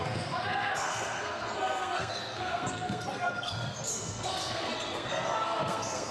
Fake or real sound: fake